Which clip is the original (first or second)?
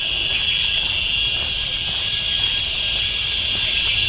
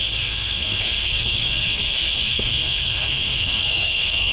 first